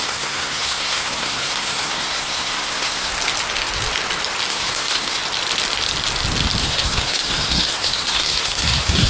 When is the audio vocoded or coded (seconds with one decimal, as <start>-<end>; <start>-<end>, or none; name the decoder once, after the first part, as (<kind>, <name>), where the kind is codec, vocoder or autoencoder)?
0.0-3.1 (codec, SNAC); 4.5-5.2; 6.6-9.1